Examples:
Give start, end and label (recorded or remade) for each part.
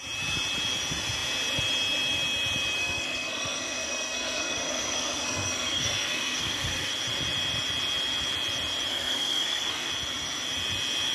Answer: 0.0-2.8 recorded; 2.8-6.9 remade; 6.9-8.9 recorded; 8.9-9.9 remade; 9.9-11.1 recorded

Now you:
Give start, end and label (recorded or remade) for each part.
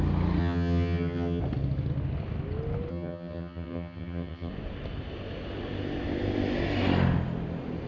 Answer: 0.0-0.4 recorded; 0.4-1.4 remade; 1.4-2.9 recorded; 2.9-4.5 remade; 4.5-7.9 recorded